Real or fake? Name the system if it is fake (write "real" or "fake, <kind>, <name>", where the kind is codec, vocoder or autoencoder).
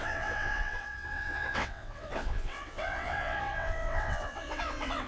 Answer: fake, vocoder, WaveNeXt